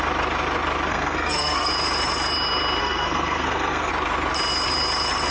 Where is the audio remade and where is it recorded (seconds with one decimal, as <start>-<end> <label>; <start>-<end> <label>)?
0.0-0.9 recorded; 0.9-1.7 remade; 1.7-2.8 recorded; 2.8-3.9 remade; 3.9-5.3 recorded